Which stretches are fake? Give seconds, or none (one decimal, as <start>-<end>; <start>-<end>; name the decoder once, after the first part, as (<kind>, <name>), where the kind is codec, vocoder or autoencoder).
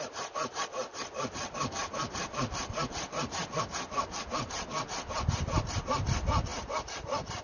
0.0-7.4 (vocoder, BigVGAN v2)